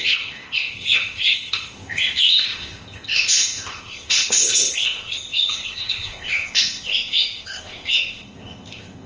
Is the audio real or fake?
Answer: fake